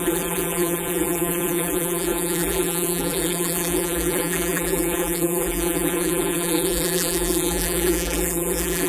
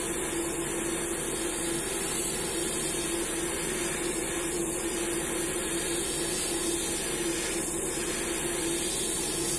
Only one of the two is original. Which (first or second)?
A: second